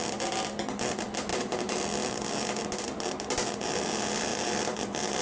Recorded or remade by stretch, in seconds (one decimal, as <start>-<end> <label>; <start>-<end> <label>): 0.0-1.3 recorded; 1.3-2.6 remade; 2.6-4.3 recorded; 4.3-5.2 remade